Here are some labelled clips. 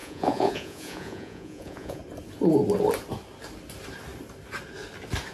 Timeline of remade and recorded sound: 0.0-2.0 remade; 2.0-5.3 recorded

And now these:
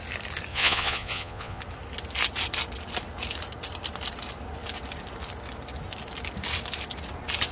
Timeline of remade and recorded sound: 0.0-0.5 recorded; 0.5-1.6 remade; 1.6-7.5 recorded

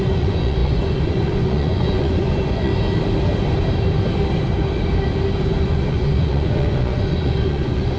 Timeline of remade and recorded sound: 0.0-2.7 remade; 2.7-5.6 recorded; 5.6-8.0 remade

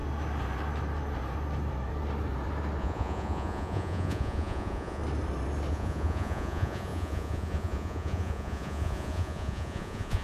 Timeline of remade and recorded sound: 0.0-2.8 recorded; 2.8-5.0 remade; 5.0-5.7 recorded; 5.7-10.2 remade

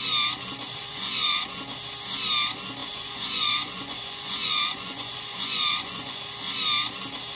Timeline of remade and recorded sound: 0.0-0.8 recorded; 0.8-1.6 remade; 1.6-2.8 recorded; 2.8-6.2 remade; 6.2-7.4 recorded

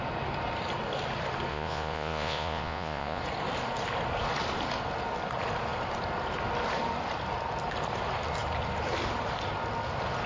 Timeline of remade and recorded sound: 0.0-1.5 recorded; 1.5-3.2 remade; 3.2-10.3 recorded